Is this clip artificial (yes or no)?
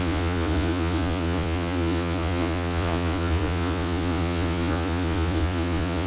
yes